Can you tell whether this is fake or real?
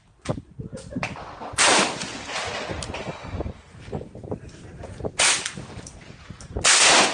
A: real